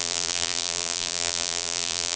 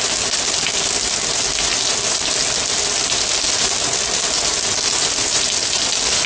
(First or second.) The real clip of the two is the second